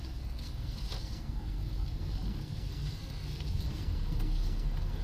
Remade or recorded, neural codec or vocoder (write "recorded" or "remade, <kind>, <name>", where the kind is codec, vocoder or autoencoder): remade, codec, SNAC